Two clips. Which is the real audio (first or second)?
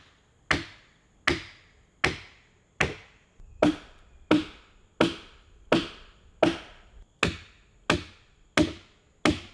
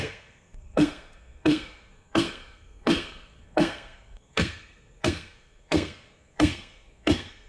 first